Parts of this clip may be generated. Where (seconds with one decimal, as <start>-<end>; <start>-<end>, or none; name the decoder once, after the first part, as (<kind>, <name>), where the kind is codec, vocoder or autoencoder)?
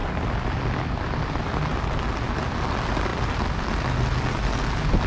0.0-1.1 (vocoder, BigVGAN v2)